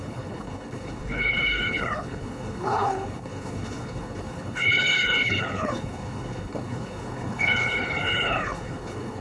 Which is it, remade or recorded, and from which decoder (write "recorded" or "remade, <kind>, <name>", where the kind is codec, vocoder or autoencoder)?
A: remade, codec, HILCodec